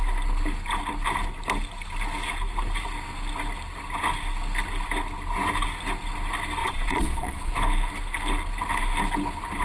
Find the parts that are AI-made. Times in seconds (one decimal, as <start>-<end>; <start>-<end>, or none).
6.6-7.5